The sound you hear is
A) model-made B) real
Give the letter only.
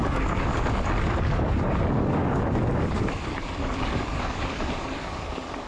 A